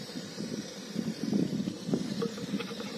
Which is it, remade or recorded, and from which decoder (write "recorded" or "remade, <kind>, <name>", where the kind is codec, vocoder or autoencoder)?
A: remade, vocoder, BigVGAN v2